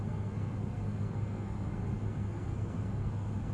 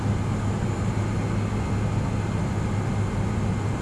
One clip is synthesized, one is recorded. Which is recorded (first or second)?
second